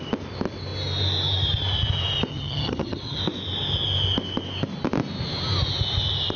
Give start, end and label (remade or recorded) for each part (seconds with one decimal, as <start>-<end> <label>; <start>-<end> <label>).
0.0-2.3 recorded; 2.3-3.2 remade; 3.2-6.4 recorded

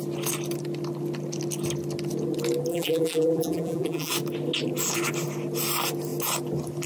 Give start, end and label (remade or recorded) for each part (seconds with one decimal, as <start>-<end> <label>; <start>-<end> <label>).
0.0-2.7 recorded; 2.7-4.1 remade; 4.1-6.9 recorded

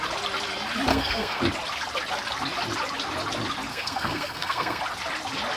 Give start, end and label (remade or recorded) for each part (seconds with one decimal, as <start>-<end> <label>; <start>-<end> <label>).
0.0-0.9 recorded; 0.9-1.4 remade; 1.4-3.7 recorded; 3.7-4.8 remade; 4.8-5.6 recorded

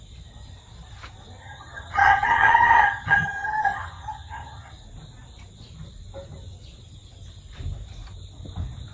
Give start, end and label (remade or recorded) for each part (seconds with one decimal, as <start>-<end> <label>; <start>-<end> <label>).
0.0-1.4 recorded; 1.4-4.7 remade; 4.7-8.9 recorded